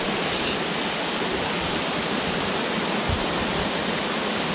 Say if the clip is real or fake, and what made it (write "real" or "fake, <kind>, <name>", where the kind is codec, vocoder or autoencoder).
real